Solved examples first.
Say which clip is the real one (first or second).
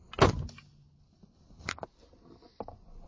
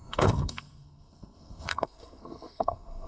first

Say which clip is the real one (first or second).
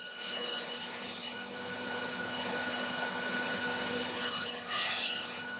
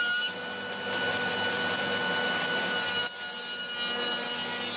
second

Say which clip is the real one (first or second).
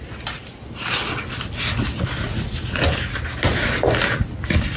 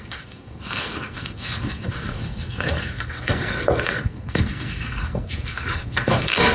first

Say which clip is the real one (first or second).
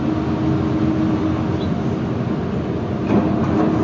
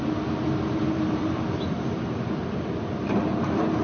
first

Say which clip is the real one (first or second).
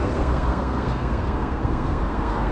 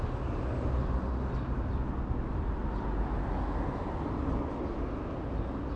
second